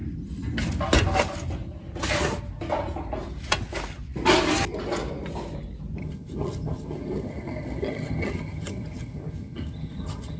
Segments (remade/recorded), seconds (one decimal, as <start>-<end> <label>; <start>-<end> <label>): 0.0-6.0 recorded; 6.0-10.4 remade

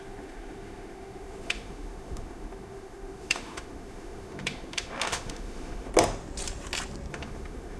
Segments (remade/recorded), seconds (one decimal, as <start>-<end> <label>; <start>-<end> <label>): 0.0-5.9 remade; 5.9-7.1 recorded; 7.1-7.8 remade

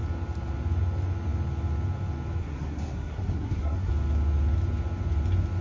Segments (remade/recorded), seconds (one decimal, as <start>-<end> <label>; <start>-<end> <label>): 0.0-2.4 recorded; 2.4-3.9 remade; 3.9-5.6 recorded

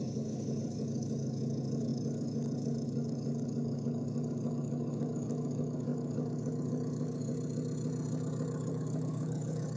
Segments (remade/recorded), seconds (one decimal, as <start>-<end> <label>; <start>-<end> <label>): 0.0-7.3 remade; 7.3-8.7 recorded; 8.7-9.8 remade

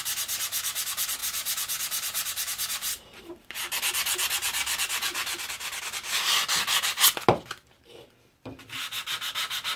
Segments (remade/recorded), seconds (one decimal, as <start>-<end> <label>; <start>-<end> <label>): 0.0-1.2 recorded; 1.2-5.8 remade; 5.8-9.8 recorded

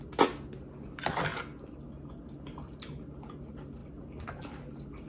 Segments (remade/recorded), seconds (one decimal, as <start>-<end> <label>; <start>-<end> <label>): 0.0-5.1 recorded